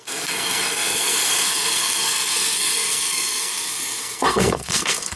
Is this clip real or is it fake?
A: fake